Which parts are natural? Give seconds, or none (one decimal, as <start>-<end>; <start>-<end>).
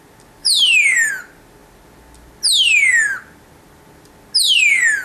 0.0-0.4; 1.1-5.0